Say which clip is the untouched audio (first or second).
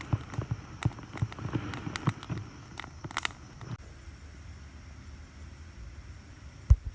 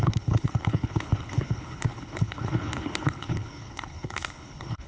first